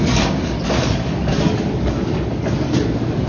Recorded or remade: remade